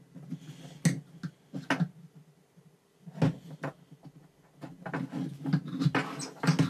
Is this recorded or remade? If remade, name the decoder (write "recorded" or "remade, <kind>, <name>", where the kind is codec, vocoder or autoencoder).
recorded